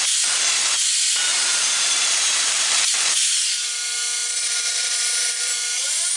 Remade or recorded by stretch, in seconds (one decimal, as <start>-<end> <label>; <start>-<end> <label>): 0.0-1.3 recorded; 1.3-3.0 remade; 3.0-4.2 recorded; 4.2-5.5 remade; 5.5-6.2 recorded